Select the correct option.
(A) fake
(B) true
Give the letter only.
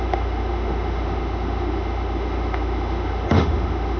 A